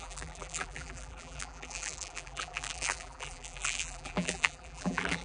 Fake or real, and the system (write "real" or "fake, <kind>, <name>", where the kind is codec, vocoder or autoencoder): fake, vocoder, BigVGAN v2